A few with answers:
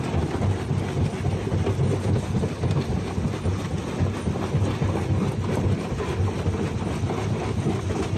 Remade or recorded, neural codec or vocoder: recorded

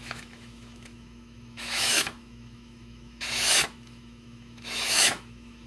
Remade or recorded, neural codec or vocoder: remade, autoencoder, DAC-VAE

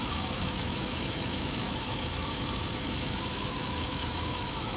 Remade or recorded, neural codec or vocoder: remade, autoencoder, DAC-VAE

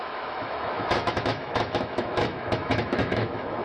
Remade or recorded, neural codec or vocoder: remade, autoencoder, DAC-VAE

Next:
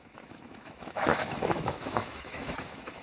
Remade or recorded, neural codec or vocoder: remade, autoencoder, DAC-VAE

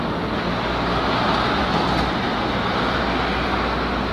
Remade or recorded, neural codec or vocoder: recorded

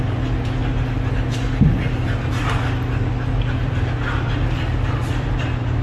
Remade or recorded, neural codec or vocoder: recorded